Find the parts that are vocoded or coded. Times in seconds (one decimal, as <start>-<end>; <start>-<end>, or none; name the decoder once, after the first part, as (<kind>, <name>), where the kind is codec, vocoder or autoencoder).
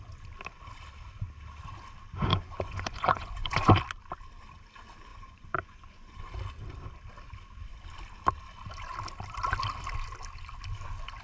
2.3-3.7 (vocoder, Vocos); 5.1-6.2